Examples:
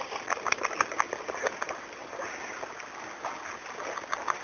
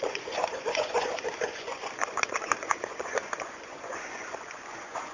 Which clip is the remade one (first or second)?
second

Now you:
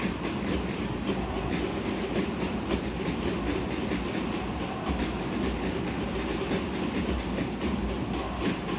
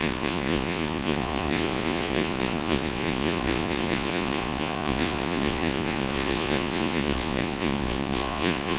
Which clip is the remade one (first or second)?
second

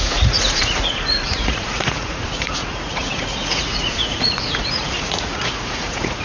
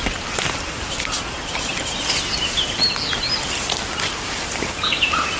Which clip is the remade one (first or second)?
first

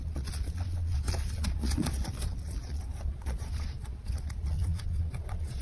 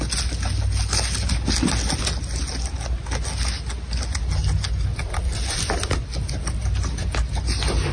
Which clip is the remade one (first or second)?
first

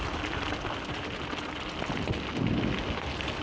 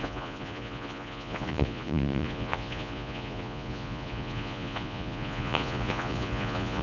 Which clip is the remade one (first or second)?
second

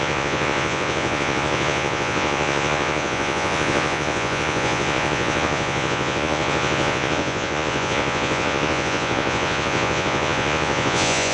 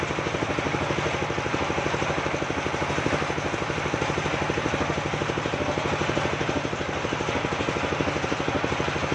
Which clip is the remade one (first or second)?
first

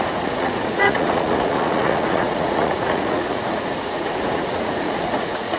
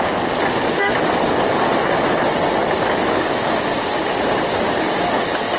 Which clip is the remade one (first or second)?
first